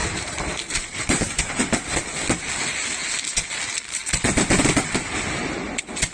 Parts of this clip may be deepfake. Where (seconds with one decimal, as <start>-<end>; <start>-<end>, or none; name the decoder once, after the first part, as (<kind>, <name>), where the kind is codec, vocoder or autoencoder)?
0.0-1.6 (vocoder, BigVGAN v2)